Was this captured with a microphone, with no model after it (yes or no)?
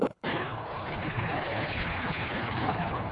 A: no